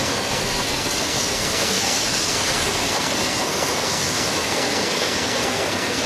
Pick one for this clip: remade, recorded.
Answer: remade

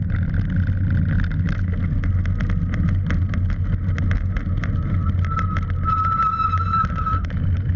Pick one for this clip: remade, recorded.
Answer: recorded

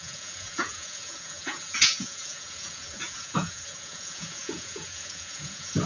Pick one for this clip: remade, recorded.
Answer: remade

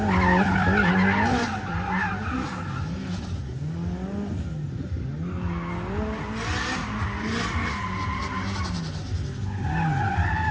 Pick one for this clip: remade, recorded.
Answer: recorded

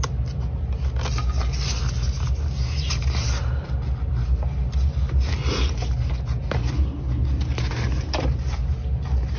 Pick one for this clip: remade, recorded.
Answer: recorded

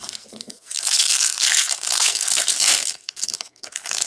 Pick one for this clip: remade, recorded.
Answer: remade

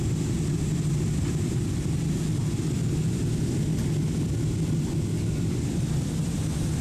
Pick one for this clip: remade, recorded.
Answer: recorded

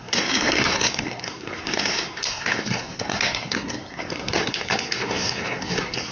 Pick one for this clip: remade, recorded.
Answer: remade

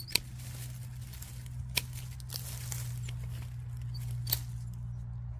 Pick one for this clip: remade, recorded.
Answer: recorded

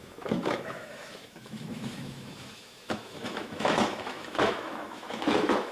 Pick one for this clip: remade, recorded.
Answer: remade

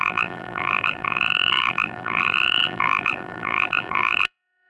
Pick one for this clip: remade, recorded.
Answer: remade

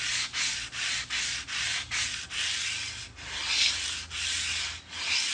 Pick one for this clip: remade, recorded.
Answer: recorded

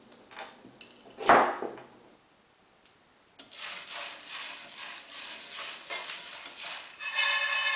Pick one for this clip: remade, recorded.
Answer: recorded